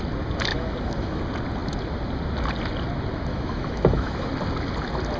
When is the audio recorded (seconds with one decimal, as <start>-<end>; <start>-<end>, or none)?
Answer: 0.0-0.5; 1.2-3.3; 4.3-5.2